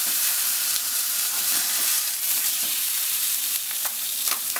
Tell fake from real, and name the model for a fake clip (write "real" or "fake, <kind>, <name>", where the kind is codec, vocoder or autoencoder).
fake, vocoder, BigVGAN v2